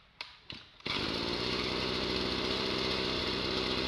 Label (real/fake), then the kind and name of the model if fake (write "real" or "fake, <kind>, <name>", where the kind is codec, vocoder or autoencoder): fake, vocoder, BigVGAN v2